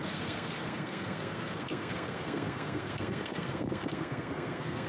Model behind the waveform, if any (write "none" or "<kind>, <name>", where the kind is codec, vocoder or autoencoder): codec, SNAC